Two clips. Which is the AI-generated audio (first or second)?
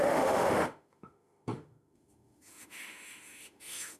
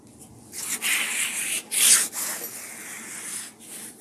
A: first